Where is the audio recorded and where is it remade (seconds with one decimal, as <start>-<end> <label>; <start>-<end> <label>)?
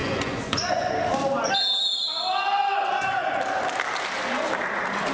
0.0-0.9 remade; 0.9-2.6 recorded; 2.6-3.4 remade; 3.4-5.1 recorded